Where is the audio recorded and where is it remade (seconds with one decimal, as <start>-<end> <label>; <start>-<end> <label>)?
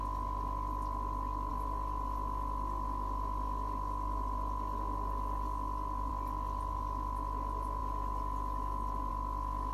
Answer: 0.0-9.7 recorded